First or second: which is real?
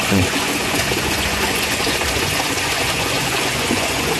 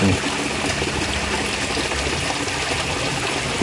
second